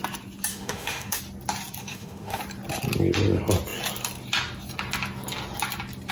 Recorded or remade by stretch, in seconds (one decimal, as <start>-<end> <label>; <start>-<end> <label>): 0.0-0.5 recorded; 0.5-1.2 remade; 1.2-1.8 recorded; 1.8-2.4 remade; 2.4-6.1 recorded